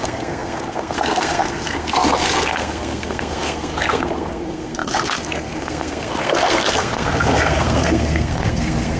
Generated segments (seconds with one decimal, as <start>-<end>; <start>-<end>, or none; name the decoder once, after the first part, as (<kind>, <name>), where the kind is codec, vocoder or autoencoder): 0.0-9.0 (codec, SNAC)